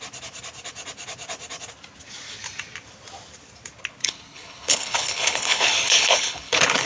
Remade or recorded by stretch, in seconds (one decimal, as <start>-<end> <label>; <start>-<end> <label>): 0.0-4.0 recorded; 4.0-6.9 remade